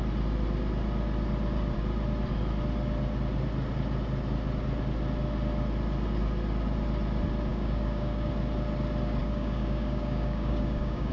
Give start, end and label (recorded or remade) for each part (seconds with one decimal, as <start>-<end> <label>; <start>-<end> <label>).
0.0-7.5 recorded; 7.5-8.3 remade; 8.3-9.2 recorded; 9.2-11.1 remade

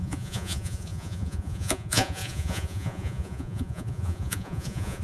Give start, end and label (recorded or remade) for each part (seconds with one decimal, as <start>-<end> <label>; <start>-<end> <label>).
0.0-5.0 remade

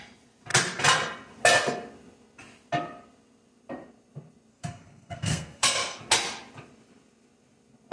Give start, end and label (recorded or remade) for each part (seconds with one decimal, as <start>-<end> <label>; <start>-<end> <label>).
0.0-4.5 recorded; 4.5-6.0 remade; 6.0-7.9 recorded

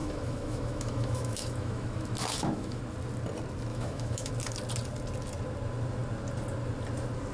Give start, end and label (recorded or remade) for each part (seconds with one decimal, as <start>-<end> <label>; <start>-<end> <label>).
0.0-2.8 remade; 2.8-3.7 recorded; 3.7-4.3 remade; 4.3-7.3 recorded